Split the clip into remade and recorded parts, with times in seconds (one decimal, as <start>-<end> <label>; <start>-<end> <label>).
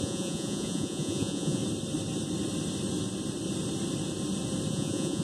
0.0-1.6 remade; 1.6-4.7 recorded; 4.7-5.2 remade